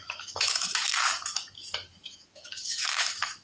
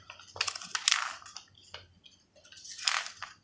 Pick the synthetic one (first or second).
first